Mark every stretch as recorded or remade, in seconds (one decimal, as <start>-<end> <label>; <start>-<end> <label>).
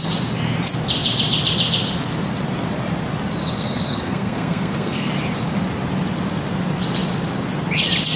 0.0-3.4 recorded; 3.4-5.1 remade; 5.1-8.2 recorded